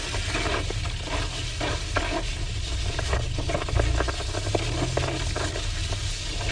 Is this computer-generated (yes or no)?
no